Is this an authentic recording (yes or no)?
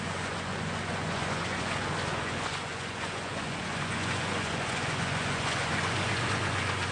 no